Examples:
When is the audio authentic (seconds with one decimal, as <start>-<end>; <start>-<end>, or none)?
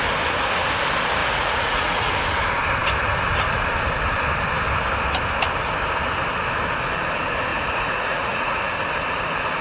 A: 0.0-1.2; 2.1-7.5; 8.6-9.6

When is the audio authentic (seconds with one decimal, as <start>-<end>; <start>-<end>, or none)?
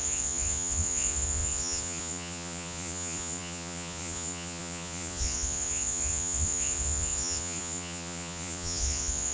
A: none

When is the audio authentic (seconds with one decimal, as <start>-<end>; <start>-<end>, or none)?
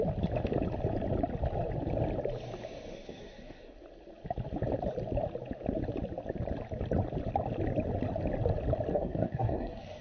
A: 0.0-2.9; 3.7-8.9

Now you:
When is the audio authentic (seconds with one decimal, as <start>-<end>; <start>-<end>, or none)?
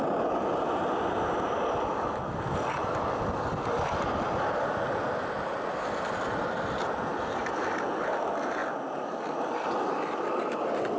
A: 0.0-11.0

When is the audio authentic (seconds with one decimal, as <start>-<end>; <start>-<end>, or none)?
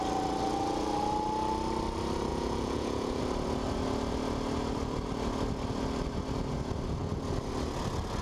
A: 0.0-2.3; 3.2-8.2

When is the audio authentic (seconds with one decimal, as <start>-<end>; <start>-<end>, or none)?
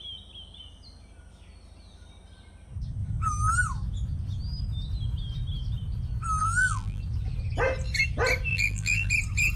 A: 0.0-6.4; 7.0-8.5; 9.1-9.6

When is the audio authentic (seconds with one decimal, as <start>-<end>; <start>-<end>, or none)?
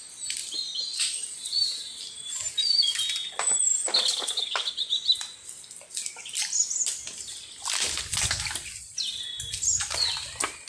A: 0.0-0.4; 2.3-10.7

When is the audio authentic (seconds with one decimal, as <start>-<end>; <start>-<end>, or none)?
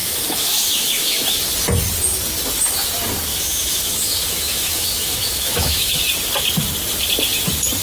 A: 1.4-3.3; 6.0-7.8